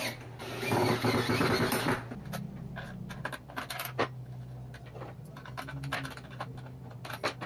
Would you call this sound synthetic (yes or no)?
no